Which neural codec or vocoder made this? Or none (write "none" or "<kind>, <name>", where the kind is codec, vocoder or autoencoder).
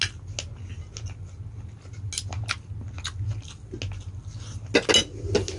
none